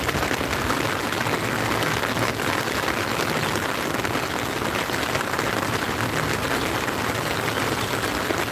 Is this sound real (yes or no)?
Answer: yes